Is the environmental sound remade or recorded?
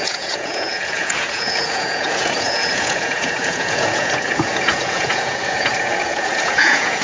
remade